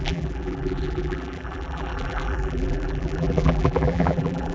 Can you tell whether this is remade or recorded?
remade